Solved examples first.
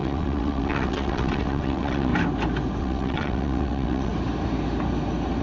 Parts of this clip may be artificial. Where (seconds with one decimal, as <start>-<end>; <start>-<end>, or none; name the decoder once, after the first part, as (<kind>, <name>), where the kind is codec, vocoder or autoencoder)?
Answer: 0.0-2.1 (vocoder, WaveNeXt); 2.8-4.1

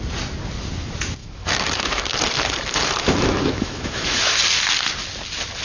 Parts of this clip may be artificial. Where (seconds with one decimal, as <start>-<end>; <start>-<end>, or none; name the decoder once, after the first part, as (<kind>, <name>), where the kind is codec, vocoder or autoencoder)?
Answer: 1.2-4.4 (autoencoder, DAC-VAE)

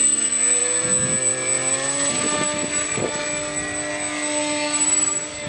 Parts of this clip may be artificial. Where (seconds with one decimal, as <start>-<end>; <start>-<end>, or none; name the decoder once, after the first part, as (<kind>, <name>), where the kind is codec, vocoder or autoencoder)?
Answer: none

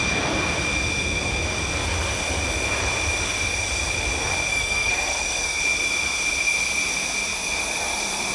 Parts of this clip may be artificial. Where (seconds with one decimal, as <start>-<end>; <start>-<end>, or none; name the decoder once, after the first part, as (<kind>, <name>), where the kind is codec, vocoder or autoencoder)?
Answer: 4.5-5.6 (codec, SNAC)

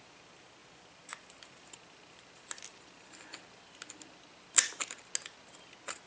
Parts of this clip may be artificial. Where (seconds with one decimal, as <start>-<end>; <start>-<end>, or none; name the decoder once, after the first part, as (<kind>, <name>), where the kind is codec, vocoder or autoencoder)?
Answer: 0.6-1.1 (vocoder, BigVGAN v2); 2.7-3.3